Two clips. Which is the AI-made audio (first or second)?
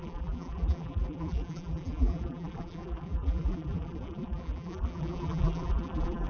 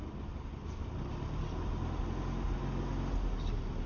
first